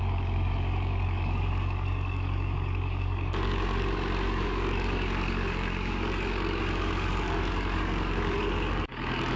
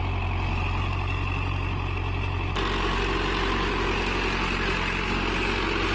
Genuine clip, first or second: second